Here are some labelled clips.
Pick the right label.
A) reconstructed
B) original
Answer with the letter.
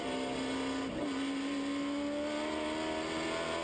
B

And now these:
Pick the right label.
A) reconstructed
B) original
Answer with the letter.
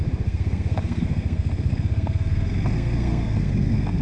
A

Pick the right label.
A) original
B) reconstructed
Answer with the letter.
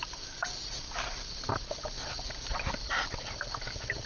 A